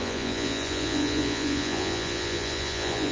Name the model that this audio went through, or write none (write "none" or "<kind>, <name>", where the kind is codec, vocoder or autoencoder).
vocoder, Vocos